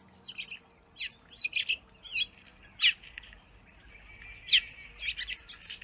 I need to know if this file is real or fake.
real